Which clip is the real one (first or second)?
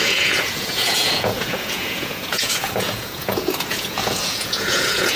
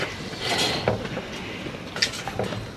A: second